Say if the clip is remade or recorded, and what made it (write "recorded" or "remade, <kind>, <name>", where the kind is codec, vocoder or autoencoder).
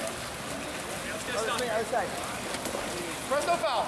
recorded